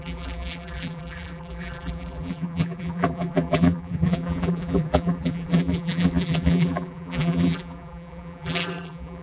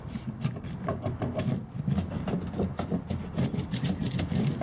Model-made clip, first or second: first